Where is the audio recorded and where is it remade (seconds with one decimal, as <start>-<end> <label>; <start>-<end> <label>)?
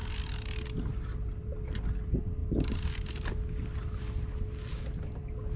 0.0-5.6 recorded